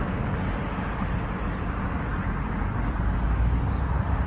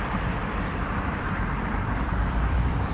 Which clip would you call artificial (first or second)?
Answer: second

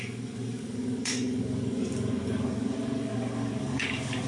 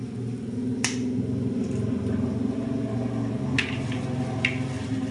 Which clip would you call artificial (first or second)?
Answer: first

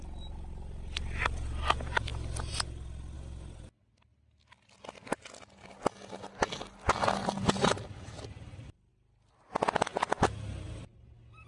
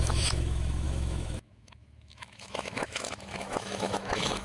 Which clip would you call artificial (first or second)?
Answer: second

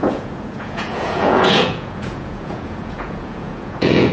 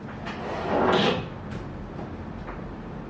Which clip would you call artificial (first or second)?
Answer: first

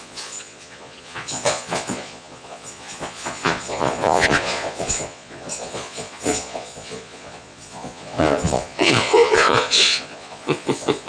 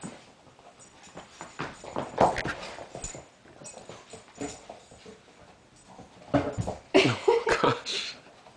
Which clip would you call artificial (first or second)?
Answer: first